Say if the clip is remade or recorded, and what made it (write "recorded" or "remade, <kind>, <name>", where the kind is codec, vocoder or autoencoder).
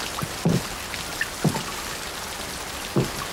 recorded